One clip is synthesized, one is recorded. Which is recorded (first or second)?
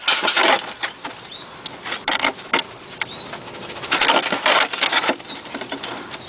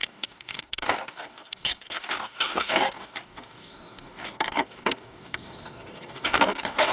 first